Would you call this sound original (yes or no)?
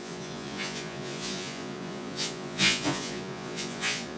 no